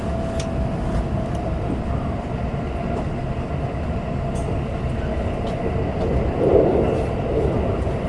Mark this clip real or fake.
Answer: real